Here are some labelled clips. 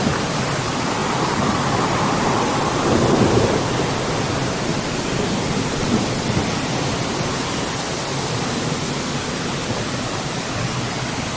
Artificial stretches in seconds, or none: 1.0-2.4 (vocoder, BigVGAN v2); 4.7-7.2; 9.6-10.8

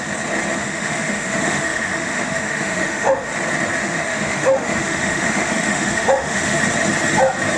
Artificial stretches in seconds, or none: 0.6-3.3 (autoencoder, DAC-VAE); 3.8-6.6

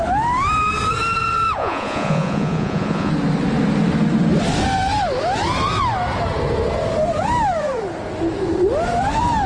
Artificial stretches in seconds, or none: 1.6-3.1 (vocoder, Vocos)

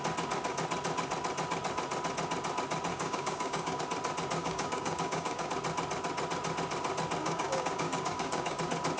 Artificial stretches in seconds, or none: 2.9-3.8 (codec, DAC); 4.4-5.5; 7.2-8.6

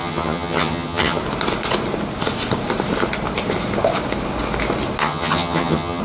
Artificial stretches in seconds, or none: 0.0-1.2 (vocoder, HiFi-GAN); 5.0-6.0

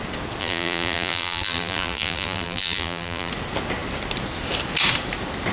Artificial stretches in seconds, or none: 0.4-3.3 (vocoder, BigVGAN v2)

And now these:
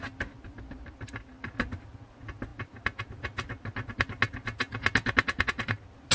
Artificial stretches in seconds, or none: none

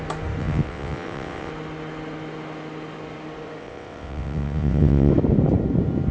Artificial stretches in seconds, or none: 0.4-1.5 (vocoder, WaveNeXt); 3.6-5.1